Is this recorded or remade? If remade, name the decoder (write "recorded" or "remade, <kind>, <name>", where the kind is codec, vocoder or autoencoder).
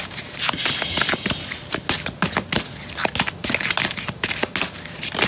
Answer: recorded